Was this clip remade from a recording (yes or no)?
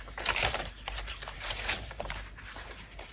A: yes